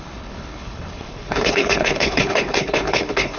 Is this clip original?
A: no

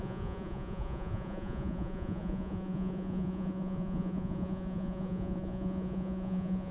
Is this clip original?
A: no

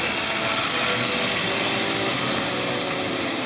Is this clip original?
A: yes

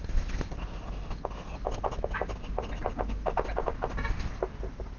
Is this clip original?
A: yes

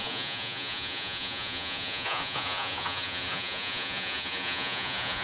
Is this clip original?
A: no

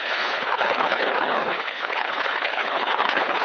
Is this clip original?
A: no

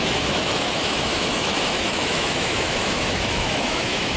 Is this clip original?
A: no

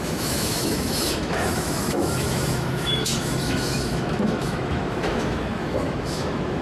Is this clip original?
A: no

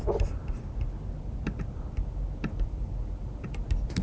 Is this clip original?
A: yes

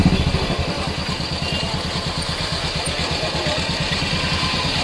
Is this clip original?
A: yes